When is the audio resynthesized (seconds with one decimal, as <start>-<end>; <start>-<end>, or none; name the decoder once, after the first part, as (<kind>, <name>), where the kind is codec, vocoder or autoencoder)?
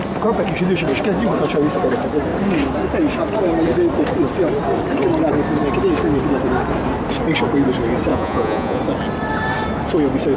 8.1-8.8 (vocoder, Vocos)